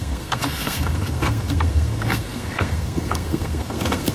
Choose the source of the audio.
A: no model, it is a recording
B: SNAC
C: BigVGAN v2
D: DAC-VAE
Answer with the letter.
B